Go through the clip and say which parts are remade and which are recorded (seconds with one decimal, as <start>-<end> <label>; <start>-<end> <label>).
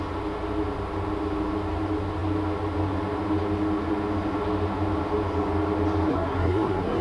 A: 0.0-6.1 recorded; 6.1-7.0 remade